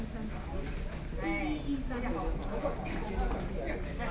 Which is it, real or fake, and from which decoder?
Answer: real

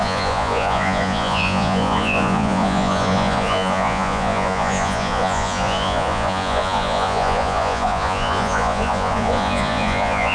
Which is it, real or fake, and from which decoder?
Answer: fake, vocoder, Vocos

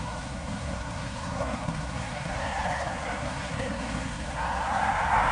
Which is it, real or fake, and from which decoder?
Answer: fake, codec, SNAC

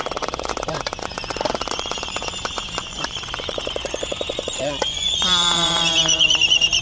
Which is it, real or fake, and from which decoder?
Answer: fake, vocoder, Vocos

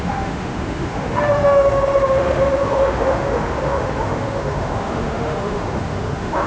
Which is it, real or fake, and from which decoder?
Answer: fake, autoencoder, DAC-VAE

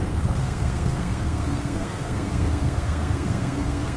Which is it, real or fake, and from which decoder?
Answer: fake, codec, SNAC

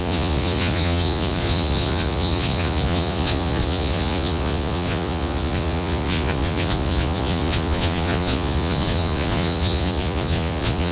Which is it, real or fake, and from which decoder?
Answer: fake, vocoder, Vocos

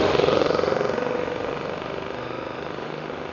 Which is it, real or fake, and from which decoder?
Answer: fake, autoencoder, DAC-VAE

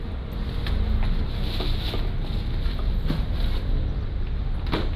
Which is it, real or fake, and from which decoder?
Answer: real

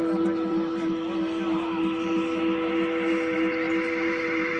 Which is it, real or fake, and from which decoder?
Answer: fake, vocoder, BigVGAN v2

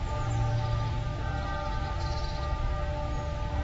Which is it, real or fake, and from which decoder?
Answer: real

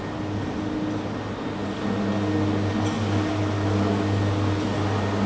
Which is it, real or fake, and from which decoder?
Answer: real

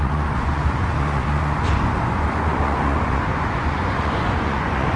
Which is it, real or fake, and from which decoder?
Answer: fake, vocoder, Vocos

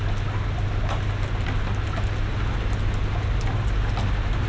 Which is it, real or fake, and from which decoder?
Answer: real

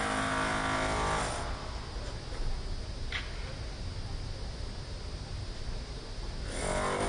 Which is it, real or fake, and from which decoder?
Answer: real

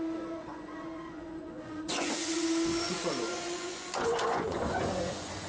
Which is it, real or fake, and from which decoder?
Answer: fake, vocoder, Vocos